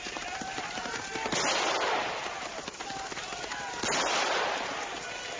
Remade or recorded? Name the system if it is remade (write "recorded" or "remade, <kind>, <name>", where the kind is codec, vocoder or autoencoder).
recorded